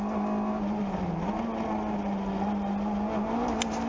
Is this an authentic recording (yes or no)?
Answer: yes